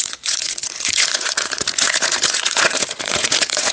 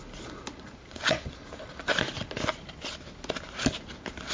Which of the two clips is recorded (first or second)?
second